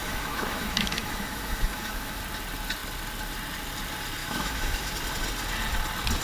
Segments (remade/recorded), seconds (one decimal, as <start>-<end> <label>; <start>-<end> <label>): 0.0-2.2 remade; 2.2-4.2 recorded; 4.2-4.9 remade; 4.9-6.2 recorded

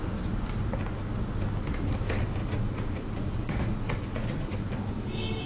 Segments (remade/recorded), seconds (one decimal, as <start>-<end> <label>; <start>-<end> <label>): 0.0-2.4 recorded; 2.4-4.7 remade; 4.7-5.5 recorded

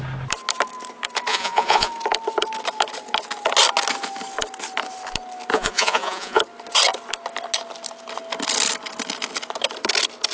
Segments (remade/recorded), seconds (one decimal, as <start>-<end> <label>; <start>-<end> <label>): 0.0-1.3 recorded; 1.3-1.9 remade; 1.9-5.5 recorded; 5.5-6.4 remade; 6.4-10.3 recorded

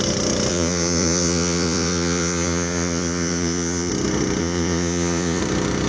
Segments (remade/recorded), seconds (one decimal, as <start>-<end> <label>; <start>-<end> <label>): 0.0-0.5 recorded; 0.5-3.9 remade; 3.9-4.4 recorded; 4.4-5.4 remade; 5.4-5.9 recorded

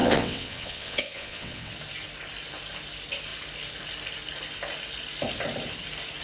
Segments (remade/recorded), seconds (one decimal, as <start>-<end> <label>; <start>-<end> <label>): 0.0-1.7 remade; 1.7-6.2 recorded

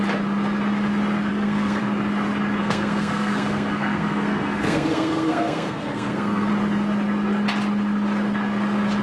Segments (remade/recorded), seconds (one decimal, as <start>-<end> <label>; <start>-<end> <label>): 0.0-1.3 recorded; 1.3-1.8 remade; 1.8-2.6 recorded; 2.6-6.5 remade; 6.5-9.0 recorded

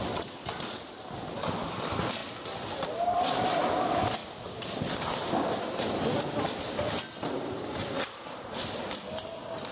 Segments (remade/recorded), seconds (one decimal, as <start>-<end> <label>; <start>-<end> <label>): 0.0-2.2 remade; 2.2-3.0 recorded; 3.0-9.7 remade